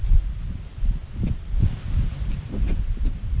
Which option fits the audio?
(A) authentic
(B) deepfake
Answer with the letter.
A